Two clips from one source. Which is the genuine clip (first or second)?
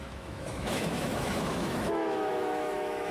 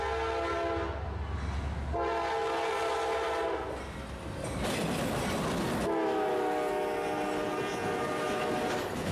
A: second